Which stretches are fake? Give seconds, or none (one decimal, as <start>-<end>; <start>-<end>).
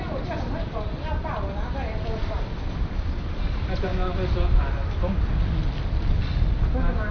none